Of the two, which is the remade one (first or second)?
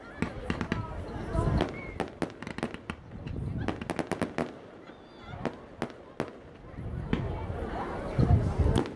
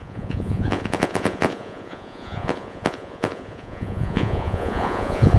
second